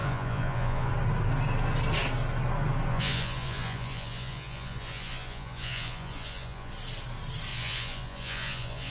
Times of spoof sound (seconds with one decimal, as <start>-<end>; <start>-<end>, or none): 0.0-0.9; 2.9-6.7; 7.5-8.9